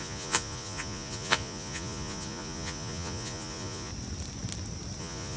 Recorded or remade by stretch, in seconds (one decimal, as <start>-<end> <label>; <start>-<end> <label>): 0.0-3.9 remade; 3.9-5.0 recorded; 5.0-5.4 remade